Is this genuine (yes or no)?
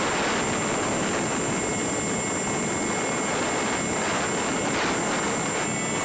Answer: yes